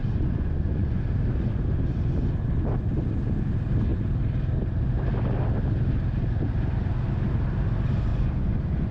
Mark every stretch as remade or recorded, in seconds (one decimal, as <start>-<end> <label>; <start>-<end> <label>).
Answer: 0.0-1.0 remade; 1.0-8.1 recorded; 8.1-8.9 remade